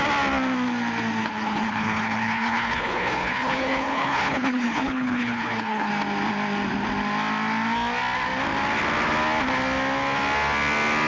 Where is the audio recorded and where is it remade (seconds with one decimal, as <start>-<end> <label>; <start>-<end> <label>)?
0.0-1.2 recorded; 1.2-5.9 remade; 5.9-11.1 recorded